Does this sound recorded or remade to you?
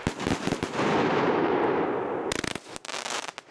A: recorded